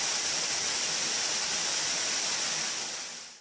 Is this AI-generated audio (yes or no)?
no